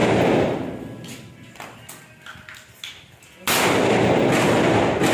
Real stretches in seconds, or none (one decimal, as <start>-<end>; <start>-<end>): 0.0-5.1